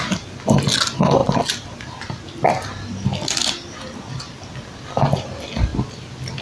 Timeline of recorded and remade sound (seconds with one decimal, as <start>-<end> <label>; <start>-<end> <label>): 0.0-6.4 recorded